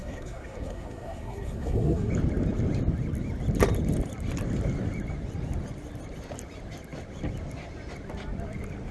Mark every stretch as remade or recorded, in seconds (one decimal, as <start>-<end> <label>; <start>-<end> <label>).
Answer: 0.0-2.1 remade; 2.1-8.9 recorded